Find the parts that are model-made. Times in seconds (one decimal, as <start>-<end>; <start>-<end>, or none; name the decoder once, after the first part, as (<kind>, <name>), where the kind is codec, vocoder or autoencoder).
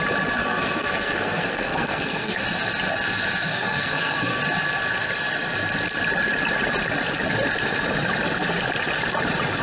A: 0.4-2.4 (codec, SNAC); 3.5-4.4